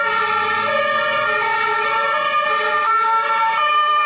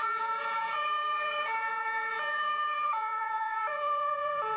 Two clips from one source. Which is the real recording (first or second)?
first